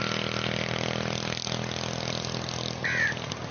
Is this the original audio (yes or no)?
yes